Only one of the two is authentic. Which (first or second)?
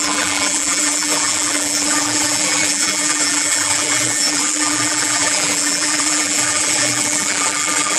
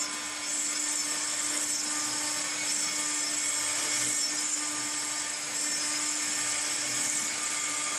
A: second